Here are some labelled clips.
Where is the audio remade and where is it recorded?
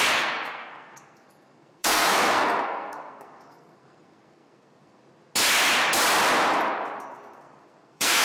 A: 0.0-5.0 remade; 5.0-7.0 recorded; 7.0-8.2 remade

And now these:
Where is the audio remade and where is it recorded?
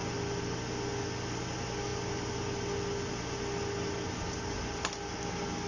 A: 0.0-5.7 recorded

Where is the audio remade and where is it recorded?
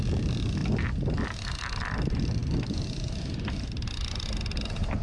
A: 0.0-5.0 recorded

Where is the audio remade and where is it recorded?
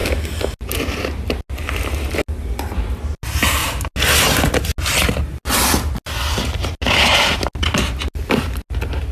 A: 0.0-9.1 recorded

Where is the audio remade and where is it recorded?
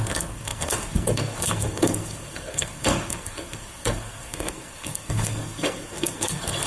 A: 0.0-6.7 remade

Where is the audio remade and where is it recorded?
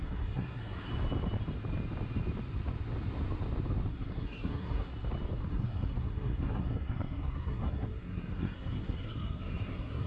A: 0.0-0.9 remade; 0.9-3.9 recorded; 3.9-4.9 remade; 4.9-5.5 recorded; 5.5-10.1 remade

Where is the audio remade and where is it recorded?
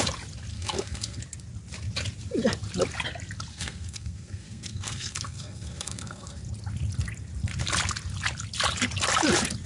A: 0.0-0.5 recorded; 0.5-1.2 remade; 1.2-3.5 recorded; 3.5-6.4 remade; 6.4-9.7 recorded